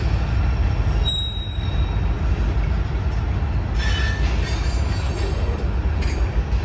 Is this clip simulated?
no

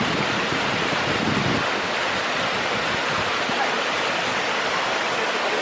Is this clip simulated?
no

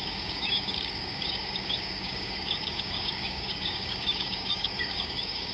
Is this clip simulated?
yes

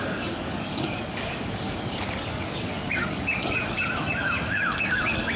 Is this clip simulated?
yes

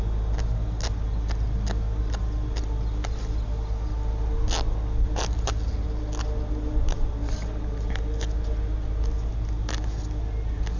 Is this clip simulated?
no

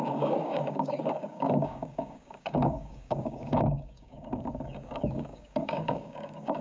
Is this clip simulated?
yes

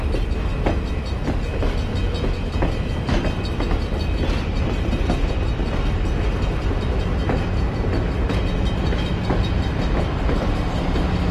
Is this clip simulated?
no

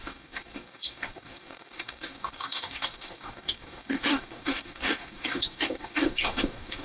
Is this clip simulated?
yes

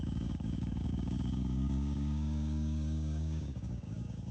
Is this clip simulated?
yes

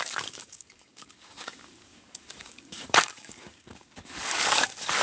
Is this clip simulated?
yes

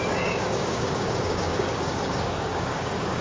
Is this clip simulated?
yes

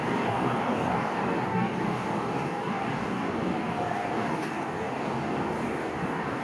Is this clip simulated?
yes